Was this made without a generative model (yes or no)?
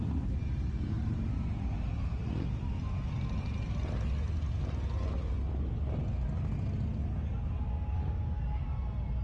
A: yes